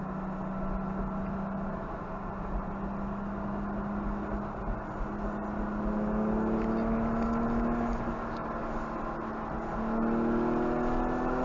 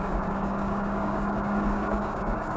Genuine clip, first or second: first